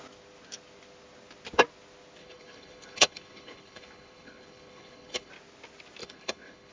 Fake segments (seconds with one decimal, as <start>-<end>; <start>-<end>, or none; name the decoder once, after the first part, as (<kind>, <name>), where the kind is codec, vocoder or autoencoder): 2.2-5.3 (codec, HILCodec); 6.0-6.7